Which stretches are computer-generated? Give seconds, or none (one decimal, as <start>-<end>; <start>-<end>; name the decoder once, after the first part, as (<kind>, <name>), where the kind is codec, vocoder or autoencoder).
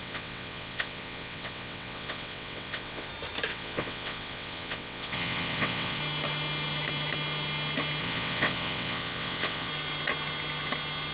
0.0-3.1 (vocoder, WaveNeXt); 3.5-6.0; 8.0-9.7